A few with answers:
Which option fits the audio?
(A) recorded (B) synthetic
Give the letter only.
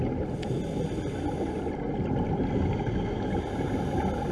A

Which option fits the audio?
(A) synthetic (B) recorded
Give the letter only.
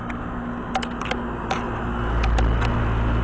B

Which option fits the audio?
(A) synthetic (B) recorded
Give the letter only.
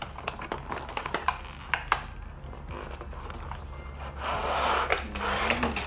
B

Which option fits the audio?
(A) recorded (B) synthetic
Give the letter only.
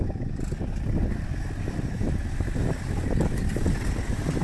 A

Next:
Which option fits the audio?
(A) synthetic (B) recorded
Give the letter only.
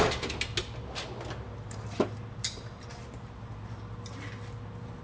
B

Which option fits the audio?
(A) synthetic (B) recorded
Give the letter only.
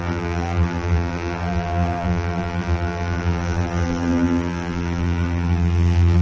A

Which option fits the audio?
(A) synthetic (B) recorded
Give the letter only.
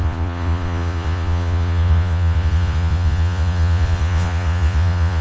A